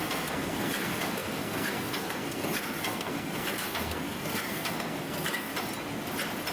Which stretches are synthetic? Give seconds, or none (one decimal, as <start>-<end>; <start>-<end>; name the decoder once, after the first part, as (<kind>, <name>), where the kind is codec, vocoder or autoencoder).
0.0-5.5 (codec, SNAC)